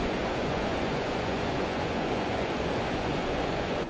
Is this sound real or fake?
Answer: fake